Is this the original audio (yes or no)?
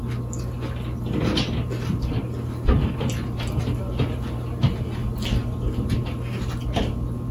yes